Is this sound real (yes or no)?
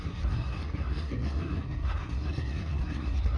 no